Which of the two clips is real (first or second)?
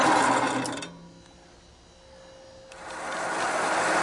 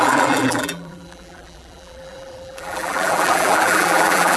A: first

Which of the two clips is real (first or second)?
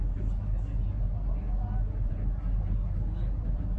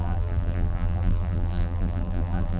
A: first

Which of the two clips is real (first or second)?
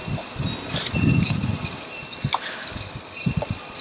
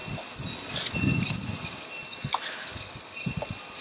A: second